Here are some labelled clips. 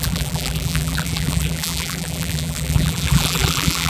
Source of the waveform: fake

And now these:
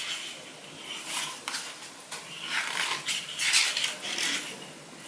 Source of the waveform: fake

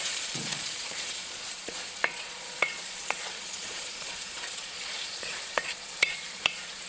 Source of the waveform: fake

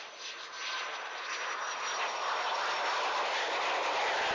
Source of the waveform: real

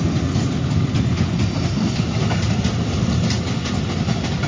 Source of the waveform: real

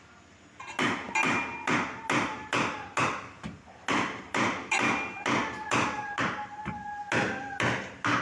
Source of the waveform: real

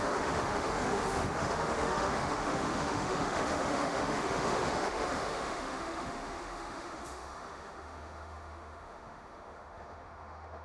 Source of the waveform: fake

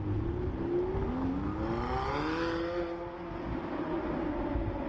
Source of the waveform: real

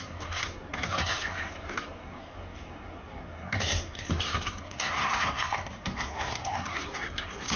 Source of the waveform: fake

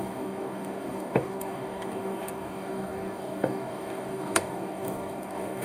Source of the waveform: fake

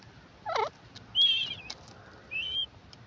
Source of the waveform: real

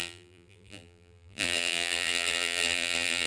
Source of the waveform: fake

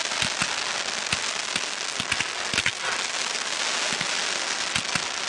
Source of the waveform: real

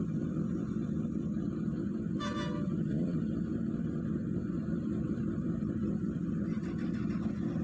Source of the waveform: real